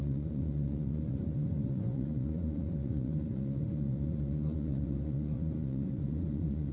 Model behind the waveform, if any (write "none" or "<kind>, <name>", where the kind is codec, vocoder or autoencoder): vocoder, Vocos